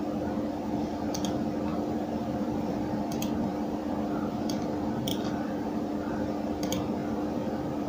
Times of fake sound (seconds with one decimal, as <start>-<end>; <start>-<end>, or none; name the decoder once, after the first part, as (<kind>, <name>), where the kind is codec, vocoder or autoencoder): 1.7-3.0 (vocoder, BigVGAN v2); 3.5-4.3; 5.1-5.8; 7.0-7.9